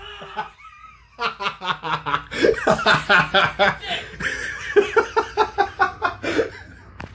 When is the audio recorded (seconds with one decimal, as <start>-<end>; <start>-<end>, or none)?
0.0-7.1